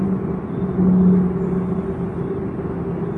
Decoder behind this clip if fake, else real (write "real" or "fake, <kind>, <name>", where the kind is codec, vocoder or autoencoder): real